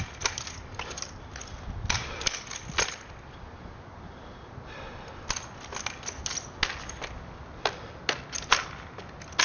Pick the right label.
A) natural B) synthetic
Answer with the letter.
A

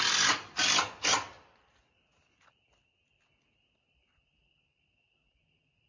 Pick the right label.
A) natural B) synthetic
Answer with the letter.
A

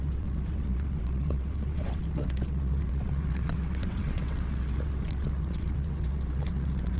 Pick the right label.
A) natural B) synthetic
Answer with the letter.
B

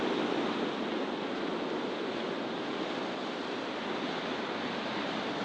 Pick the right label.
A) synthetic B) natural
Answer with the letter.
B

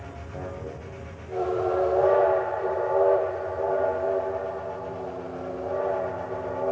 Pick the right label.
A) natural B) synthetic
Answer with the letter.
A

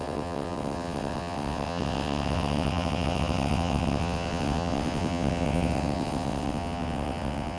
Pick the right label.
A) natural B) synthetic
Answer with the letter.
B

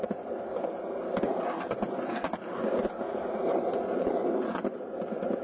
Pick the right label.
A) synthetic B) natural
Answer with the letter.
B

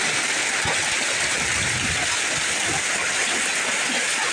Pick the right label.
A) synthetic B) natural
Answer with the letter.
B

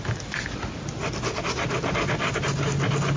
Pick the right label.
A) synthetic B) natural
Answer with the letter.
B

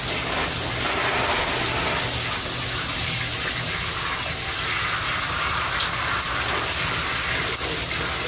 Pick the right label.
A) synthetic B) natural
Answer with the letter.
B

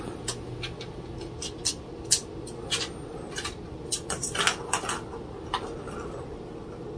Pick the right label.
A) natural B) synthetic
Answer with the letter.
A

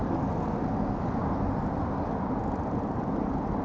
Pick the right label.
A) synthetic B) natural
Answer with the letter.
B